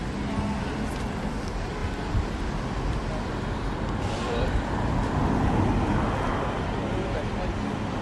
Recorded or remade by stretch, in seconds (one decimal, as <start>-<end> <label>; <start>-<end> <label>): 0.0-1.8 recorded; 1.8-5.3 remade; 5.3-8.0 recorded